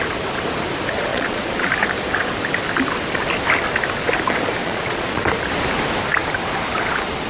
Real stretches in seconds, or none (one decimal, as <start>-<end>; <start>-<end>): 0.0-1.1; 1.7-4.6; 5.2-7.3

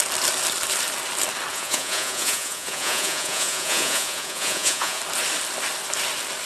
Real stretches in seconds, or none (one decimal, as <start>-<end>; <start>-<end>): 0.0-1.5; 5.0-6.5

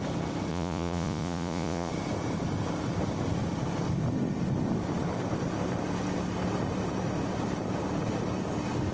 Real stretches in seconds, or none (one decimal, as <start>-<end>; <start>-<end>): 0.0-0.5; 1.9-8.9

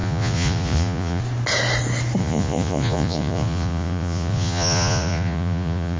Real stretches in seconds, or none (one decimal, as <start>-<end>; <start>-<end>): 1.2-2.2